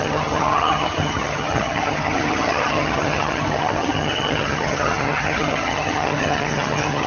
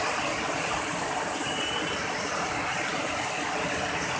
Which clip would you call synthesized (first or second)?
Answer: first